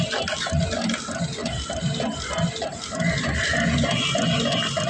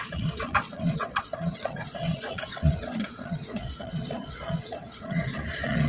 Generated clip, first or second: second